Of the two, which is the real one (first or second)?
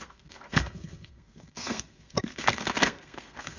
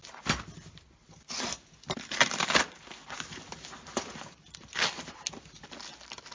second